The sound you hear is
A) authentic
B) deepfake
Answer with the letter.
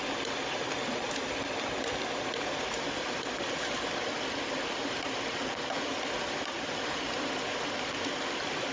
A